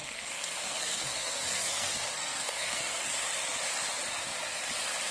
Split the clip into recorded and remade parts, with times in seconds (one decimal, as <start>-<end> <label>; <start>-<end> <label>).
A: 0.0-3.1 remade; 3.1-5.1 recorded